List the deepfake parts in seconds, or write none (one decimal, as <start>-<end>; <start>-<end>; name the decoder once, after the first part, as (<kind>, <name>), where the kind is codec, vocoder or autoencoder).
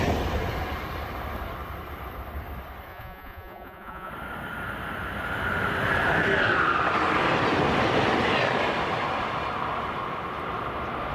2.9-4.1 (vocoder, Vocos)